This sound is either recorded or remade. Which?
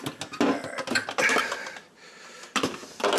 recorded